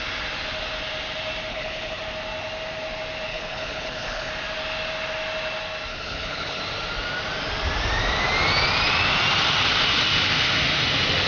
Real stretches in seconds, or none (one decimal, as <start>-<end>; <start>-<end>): 0.0-1.5; 2.0-3.3; 4.3-5.9; 6.6-11.3